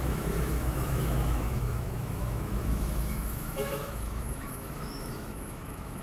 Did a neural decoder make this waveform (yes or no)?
yes